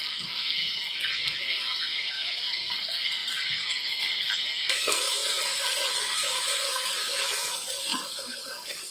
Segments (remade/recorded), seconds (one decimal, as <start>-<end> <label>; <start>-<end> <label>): 0.0-8.9 remade